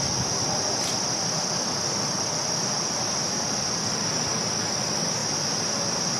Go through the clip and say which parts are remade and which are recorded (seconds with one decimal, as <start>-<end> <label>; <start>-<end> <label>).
0.0-6.2 recorded